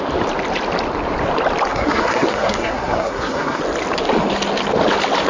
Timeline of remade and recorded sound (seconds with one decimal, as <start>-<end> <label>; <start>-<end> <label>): 0.0-1.7 recorded; 1.7-3.6 remade; 3.6-5.3 recorded